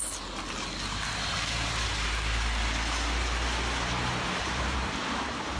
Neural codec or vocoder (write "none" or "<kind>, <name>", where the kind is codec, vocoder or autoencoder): none